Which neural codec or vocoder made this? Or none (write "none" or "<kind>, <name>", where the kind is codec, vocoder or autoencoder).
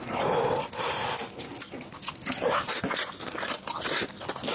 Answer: none